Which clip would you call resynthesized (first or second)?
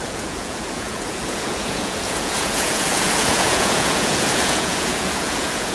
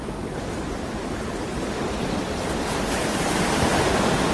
first